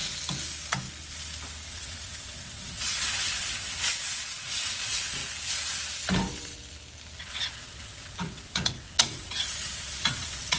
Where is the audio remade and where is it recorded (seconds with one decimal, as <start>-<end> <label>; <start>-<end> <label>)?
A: 0.0-1.7 recorded; 1.7-5.2 remade; 5.2-7.2 recorded; 7.2-10.6 remade

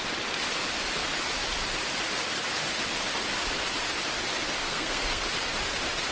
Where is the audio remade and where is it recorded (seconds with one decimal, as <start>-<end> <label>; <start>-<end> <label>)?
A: 0.0-4.6 recorded; 4.6-5.3 remade; 5.3-6.1 recorded

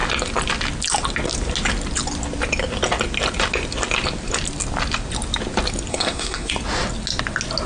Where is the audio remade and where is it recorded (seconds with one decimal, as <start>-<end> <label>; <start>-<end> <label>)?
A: 0.0-5.9 recorded; 5.9-6.5 remade; 6.5-7.7 recorded

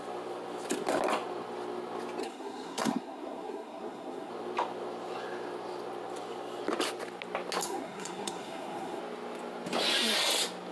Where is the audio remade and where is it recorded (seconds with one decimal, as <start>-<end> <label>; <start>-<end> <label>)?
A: 0.0-2.2 recorded; 2.2-4.3 remade; 4.3-7.6 recorded; 7.6-9.0 remade; 9.0-10.7 recorded

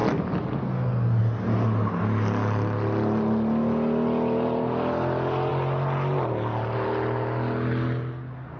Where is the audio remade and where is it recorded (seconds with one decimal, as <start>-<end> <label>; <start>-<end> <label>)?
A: 0.0-8.6 recorded